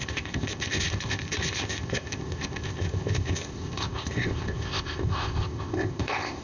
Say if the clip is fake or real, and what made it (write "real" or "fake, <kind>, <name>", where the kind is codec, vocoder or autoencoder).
fake, codec, ZipCodec